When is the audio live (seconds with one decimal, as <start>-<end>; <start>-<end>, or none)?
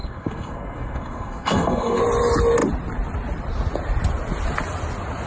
2.0-5.3